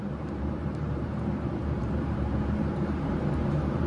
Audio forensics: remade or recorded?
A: remade